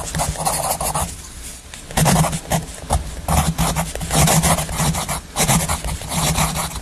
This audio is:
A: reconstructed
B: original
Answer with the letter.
B